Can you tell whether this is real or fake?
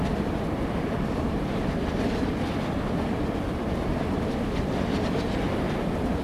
real